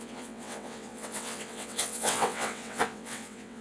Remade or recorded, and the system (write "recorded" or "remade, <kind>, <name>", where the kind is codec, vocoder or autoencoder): remade, vocoder, WaveNeXt